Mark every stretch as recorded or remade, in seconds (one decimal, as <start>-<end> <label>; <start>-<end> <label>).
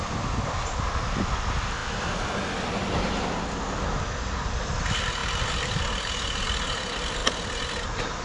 0.0-8.2 recorded